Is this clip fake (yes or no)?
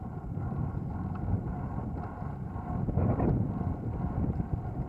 no